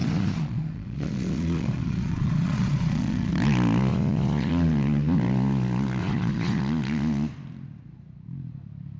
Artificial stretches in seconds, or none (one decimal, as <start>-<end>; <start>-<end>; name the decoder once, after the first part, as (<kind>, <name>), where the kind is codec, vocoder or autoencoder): 0.0-3.3 (vocoder, Vocos); 3.9-4.5; 6.0-6.6